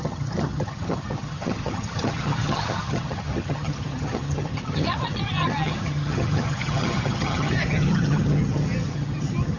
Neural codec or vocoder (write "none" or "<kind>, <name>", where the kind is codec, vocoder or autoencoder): vocoder, HiFi-GAN